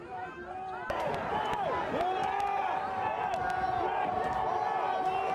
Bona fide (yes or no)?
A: yes